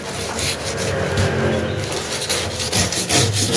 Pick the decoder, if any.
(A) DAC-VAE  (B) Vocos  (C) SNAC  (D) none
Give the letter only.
D